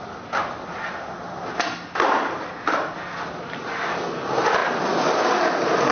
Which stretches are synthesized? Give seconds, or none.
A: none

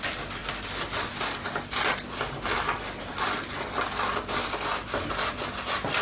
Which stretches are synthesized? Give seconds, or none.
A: none

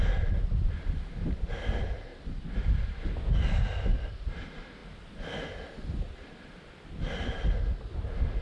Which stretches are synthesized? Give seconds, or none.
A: none

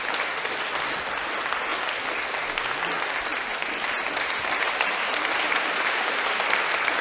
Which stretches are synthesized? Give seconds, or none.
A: 3.3-6.2 (vocoder, BigVGAN v2)

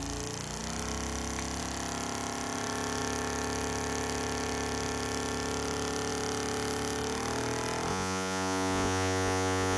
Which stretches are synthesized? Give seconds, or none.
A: 7.9-9.8 (vocoder, Vocos)

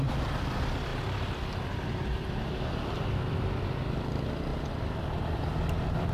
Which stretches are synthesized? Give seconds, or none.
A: none

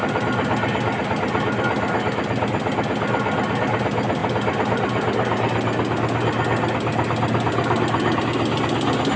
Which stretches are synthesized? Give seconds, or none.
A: none

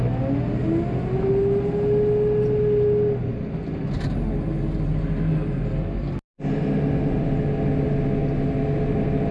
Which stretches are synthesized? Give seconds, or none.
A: none